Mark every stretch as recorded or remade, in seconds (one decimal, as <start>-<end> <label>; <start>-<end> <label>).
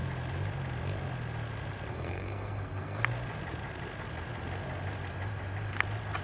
0.0-1.9 recorded; 1.9-3.0 remade; 3.0-6.2 recorded